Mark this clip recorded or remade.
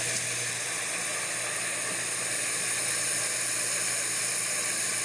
recorded